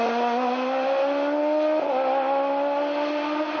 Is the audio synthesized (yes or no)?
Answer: no